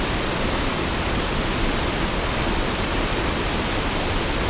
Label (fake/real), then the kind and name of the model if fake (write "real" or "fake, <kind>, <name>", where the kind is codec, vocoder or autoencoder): real